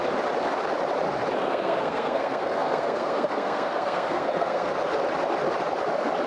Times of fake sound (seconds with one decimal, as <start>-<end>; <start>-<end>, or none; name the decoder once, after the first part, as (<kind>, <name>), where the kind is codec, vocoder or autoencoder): 1.4-4.7 (codec, SNAC)